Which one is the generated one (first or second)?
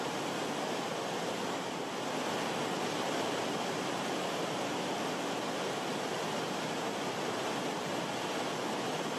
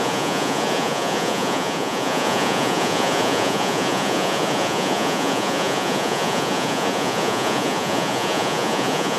second